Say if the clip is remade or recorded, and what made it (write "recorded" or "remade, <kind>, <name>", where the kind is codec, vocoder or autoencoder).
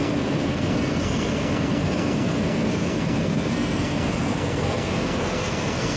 remade, codec, SNAC